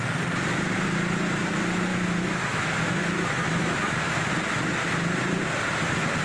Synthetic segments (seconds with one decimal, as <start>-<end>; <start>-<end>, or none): 1.9-4.3

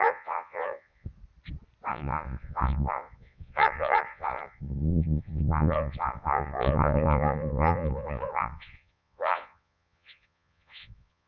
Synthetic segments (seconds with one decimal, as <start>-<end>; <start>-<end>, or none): 0.0-1.1; 1.9-11.3

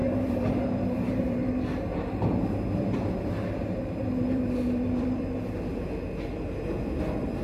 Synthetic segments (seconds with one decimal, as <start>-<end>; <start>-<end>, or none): 0.0-1.5; 1.9-5.9

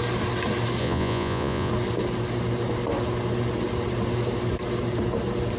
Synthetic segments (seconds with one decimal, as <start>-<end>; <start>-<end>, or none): 0.8-1.7